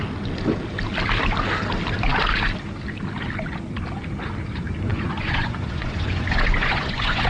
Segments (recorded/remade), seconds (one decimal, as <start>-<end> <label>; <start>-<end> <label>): 0.0-4.9 recorded; 4.9-7.3 remade